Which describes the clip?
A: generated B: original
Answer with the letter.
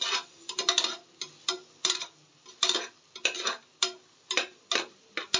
B